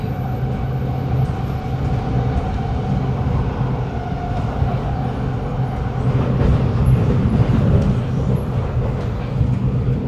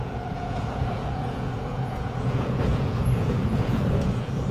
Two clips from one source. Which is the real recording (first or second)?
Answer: first